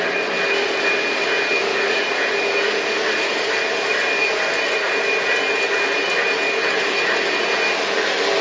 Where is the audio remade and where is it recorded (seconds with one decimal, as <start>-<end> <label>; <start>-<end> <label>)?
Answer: 0.0-1.7 recorded; 1.7-2.3 remade; 2.3-8.4 recorded

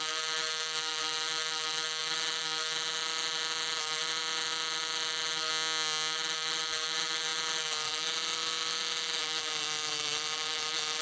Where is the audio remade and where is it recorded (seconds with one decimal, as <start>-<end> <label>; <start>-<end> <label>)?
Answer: 0.0-5.5 remade; 5.5-6.1 recorded; 6.1-11.0 remade

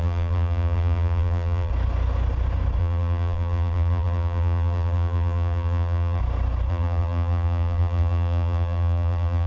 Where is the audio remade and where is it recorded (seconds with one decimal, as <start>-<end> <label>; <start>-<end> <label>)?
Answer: 0.0-1.7 remade; 1.7-2.8 recorded; 2.8-6.2 remade; 6.2-6.7 recorded; 6.7-9.5 remade

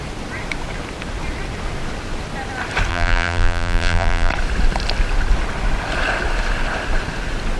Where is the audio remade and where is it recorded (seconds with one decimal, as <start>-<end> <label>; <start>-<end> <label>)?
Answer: 0.0-2.9 recorded; 2.9-4.3 remade; 4.3-7.6 recorded